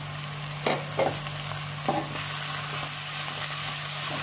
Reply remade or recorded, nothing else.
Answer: recorded